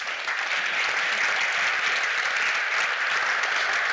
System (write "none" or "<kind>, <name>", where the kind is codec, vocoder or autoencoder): none